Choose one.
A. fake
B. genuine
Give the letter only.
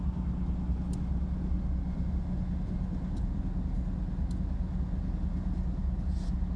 B